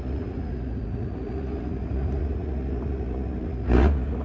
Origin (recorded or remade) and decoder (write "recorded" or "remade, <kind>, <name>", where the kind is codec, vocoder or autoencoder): remade, vocoder, Vocos